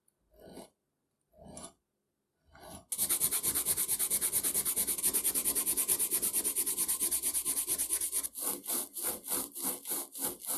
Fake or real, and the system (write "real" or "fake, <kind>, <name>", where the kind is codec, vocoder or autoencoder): real